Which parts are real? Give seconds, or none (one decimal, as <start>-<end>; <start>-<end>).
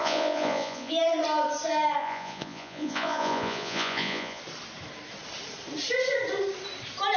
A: 0.9-2.0; 4.4-7.2